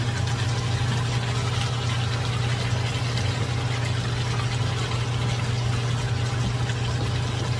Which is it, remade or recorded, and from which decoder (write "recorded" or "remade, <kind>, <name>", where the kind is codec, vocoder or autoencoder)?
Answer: recorded